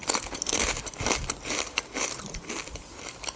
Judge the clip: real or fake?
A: fake